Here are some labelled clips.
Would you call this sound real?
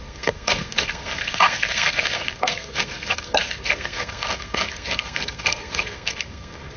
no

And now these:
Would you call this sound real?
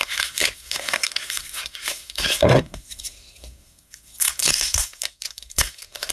no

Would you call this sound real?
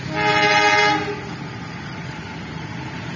yes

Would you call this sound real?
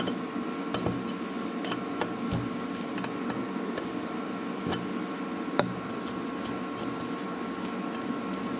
yes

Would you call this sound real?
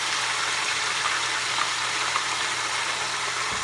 yes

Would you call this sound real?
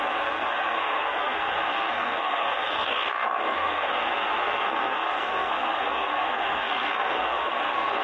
no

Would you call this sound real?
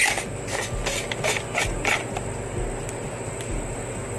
yes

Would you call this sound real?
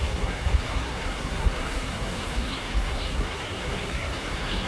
no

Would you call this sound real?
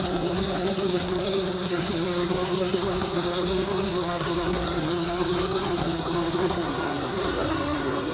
no